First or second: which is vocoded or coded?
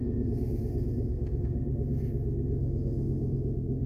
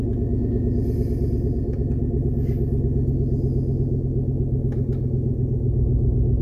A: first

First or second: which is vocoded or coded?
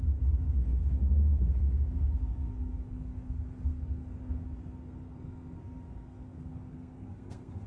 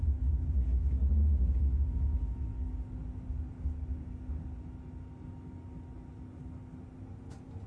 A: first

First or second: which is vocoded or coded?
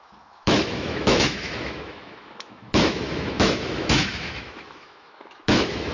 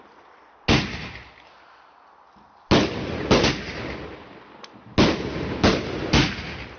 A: first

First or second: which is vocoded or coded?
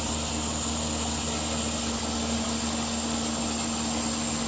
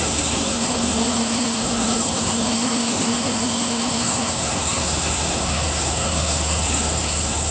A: second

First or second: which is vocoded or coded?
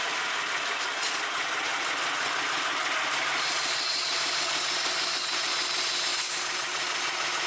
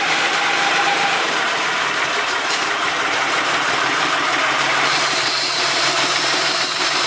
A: second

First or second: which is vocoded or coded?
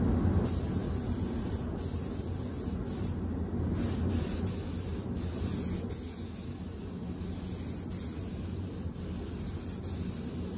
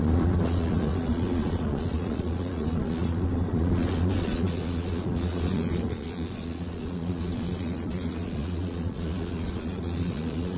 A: second